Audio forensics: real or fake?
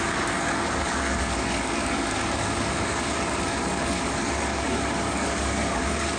fake